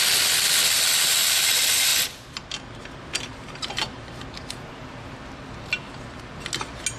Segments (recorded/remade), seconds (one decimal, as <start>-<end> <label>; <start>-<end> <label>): 0.0-7.0 recorded